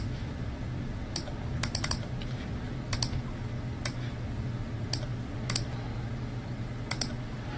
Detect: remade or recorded recorded